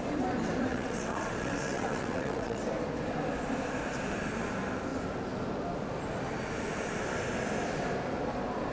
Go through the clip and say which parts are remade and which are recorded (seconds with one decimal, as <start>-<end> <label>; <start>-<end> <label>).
0.0-0.7 recorded; 0.7-2.6 remade; 2.6-8.7 recorded

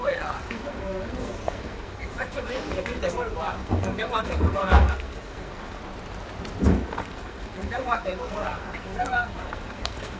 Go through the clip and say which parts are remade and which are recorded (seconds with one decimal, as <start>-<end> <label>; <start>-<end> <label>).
0.0-5.8 remade; 5.8-6.6 recorded; 6.6-10.2 remade

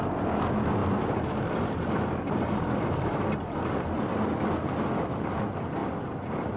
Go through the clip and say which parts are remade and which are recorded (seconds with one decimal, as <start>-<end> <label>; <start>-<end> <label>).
0.0-6.6 recorded

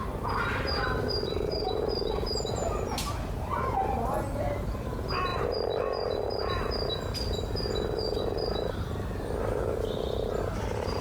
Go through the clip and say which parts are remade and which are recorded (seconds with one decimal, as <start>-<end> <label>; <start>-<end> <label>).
0.0-11.0 recorded

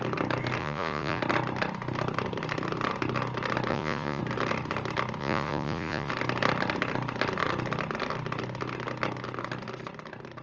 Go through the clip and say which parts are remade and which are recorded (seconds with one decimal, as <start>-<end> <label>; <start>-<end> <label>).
0.0-0.6 recorded; 0.6-1.2 remade; 1.2-3.7 recorded; 3.7-4.2 remade; 4.2-5.2 recorded; 5.2-6.1 remade; 6.1-10.4 recorded

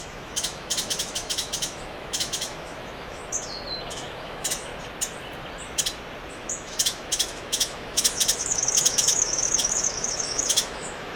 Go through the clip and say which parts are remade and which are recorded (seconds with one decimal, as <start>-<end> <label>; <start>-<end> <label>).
0.0-3.2 remade; 3.2-3.9 recorded; 3.9-4.7 remade; 4.7-6.3 recorded; 6.3-11.2 remade